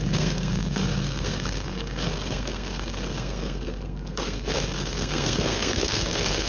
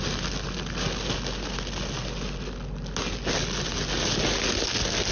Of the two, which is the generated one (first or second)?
first